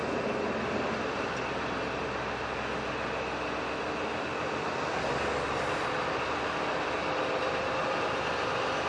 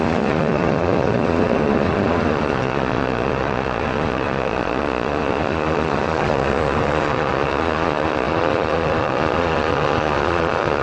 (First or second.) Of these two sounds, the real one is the first